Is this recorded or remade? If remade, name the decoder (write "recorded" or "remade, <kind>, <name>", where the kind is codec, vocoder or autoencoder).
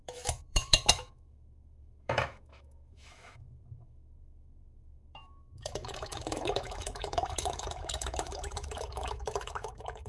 remade, autoencoder, DAC-VAE